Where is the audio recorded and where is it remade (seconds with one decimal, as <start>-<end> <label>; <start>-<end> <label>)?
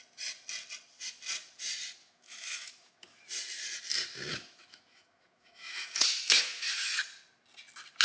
0.0-2.0 recorded; 2.0-3.2 remade; 3.2-4.3 recorded; 4.3-6.9 remade; 6.9-8.0 recorded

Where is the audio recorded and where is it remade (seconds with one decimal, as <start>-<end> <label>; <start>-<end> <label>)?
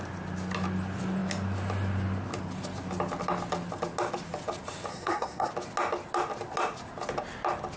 0.0-4.9 recorded; 4.9-5.5 remade; 5.5-7.8 recorded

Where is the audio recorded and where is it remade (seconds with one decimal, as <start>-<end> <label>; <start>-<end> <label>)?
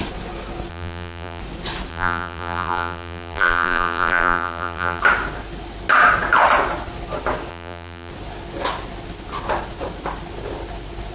0.0-0.7 recorded; 0.7-1.4 remade; 1.4-1.9 recorded; 1.9-5.0 remade; 5.0-7.5 recorded; 7.5-8.1 remade; 8.1-11.1 recorded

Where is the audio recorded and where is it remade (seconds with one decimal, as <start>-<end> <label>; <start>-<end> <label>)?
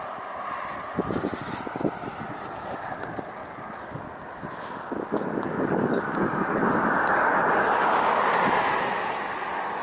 0.0-5.3 recorded; 5.3-8.2 remade; 8.2-9.8 recorded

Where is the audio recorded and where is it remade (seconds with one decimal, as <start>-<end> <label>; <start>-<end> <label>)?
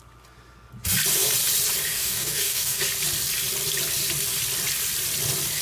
0.0-1.9 recorded; 1.9-2.8 remade; 2.8-5.6 recorded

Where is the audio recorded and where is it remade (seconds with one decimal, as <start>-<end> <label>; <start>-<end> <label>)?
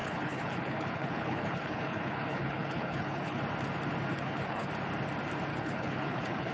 0.0-3.4 remade; 3.4-4.1 recorded; 4.1-4.7 remade; 4.7-5.5 recorded; 5.5-6.5 remade